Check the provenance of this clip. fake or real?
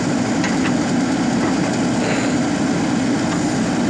real